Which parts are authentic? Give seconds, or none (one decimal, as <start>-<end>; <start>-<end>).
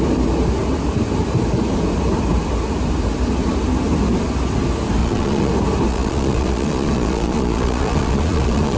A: 0.0-5.0; 5.5-5.9